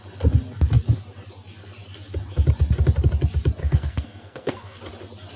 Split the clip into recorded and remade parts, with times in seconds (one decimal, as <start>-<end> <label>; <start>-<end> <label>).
0.0-3.6 recorded; 3.6-4.8 remade; 4.8-5.4 recorded